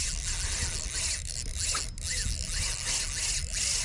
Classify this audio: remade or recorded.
recorded